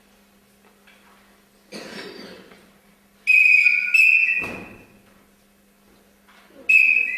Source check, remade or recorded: recorded